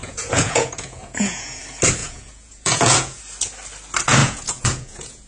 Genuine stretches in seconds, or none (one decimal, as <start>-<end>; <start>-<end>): 1.6-2.0; 3.2-4.2